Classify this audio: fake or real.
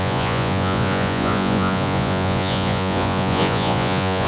fake